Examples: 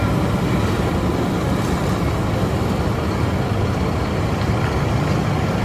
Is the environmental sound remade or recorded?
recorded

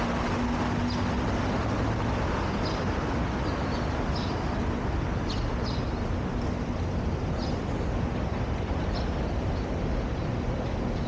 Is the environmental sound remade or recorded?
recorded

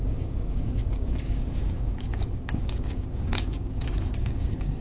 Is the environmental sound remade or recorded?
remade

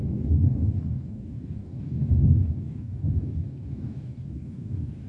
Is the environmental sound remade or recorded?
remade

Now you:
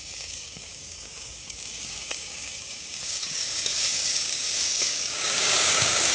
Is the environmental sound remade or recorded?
remade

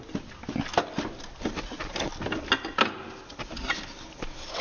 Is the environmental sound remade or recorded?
recorded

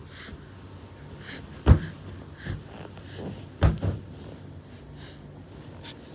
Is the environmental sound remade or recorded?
recorded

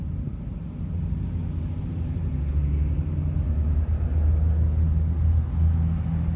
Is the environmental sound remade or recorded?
recorded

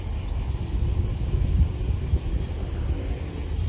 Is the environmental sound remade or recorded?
recorded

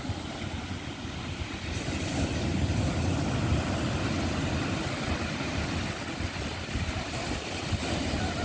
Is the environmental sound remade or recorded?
recorded